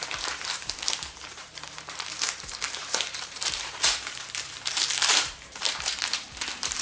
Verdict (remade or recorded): remade